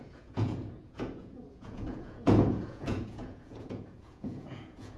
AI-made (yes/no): yes